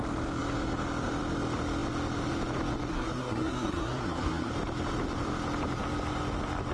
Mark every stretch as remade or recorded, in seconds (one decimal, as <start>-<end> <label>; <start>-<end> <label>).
0.0-2.9 recorded; 2.9-4.5 remade; 4.5-6.7 recorded